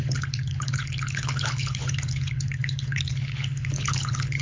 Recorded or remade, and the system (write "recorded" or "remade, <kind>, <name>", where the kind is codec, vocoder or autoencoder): remade, codec, HILCodec